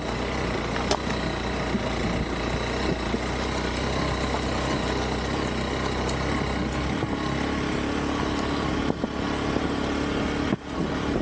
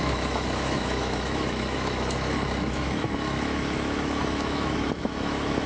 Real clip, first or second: first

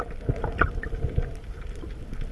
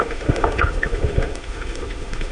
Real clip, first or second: first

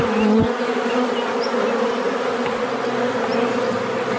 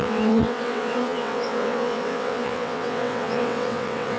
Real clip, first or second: first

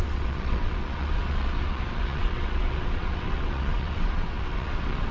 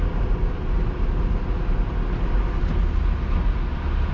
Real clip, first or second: second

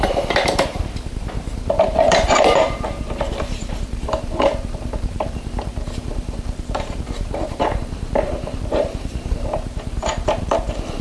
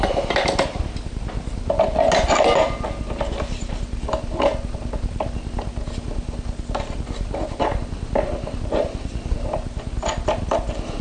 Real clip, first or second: second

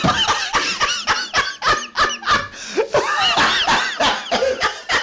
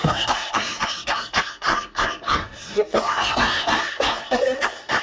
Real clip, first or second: first